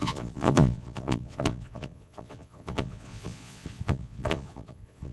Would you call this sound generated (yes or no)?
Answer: yes